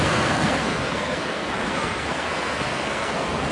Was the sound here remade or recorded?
remade